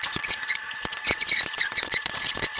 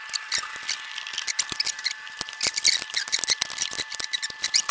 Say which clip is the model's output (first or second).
first